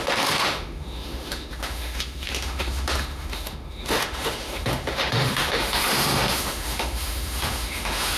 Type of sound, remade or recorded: remade